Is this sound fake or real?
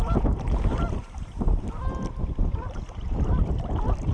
real